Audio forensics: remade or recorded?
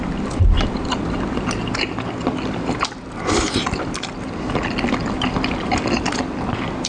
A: recorded